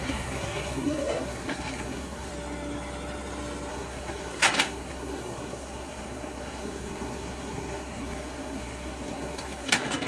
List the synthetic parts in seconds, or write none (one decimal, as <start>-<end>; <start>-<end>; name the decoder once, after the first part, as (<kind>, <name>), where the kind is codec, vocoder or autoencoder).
0.0-2.3 (codec, SNAC); 3.7-10.1